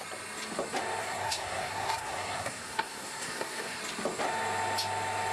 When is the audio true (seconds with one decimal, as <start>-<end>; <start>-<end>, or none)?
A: 0.0-1.0; 3.8-5.3